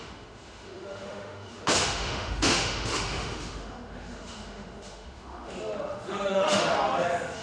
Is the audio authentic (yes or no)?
no